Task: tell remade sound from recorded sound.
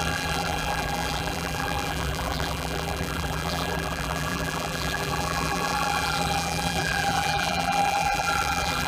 remade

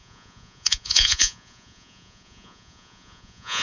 remade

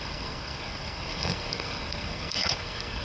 remade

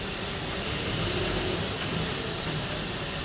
recorded